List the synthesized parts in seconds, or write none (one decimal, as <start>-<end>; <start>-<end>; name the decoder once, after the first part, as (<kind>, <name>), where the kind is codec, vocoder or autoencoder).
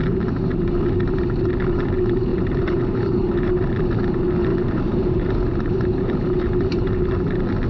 0.0-0.7 (vocoder, BigVGAN v2); 2.3-3.5; 4.5-6.8